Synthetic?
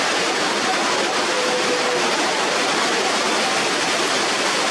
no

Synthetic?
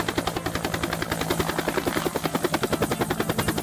no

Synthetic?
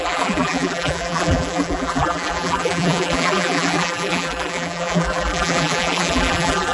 yes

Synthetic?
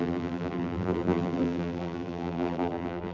yes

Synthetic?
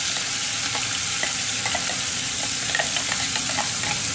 no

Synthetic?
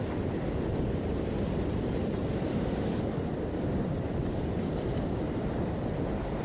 yes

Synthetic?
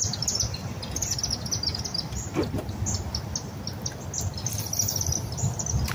no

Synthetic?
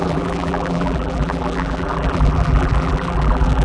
yes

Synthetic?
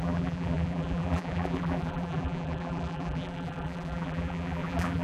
yes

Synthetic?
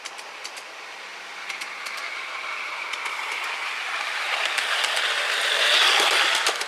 yes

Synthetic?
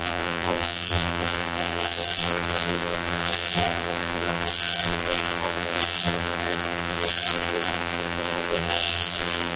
yes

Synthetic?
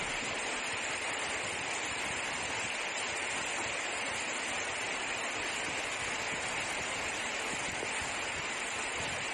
no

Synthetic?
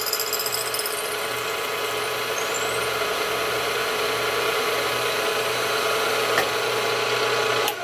no